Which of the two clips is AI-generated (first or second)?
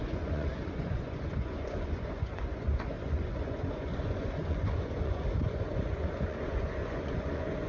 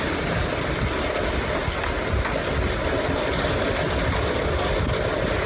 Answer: first